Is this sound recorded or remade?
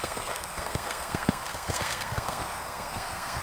remade